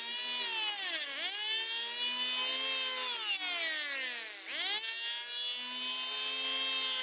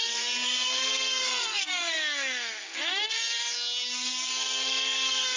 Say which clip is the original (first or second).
first